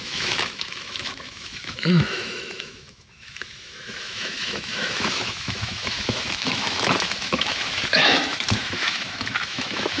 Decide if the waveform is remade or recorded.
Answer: remade